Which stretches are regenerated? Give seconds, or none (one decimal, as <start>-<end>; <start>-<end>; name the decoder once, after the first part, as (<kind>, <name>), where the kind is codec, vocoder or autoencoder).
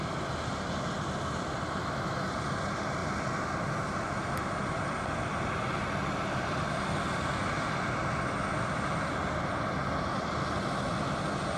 1.8-2.3 (autoencoder, DAC-VAE)